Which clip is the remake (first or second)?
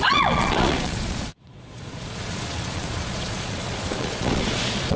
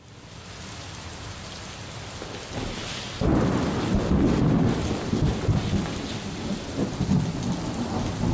first